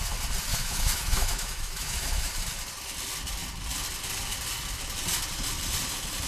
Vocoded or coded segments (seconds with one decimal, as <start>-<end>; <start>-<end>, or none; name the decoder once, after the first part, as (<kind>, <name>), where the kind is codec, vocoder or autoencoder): 0.5-2.3 (autoencoder, DAC-VAE)